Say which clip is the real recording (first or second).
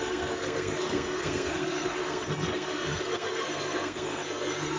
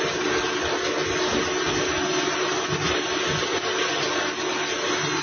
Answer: second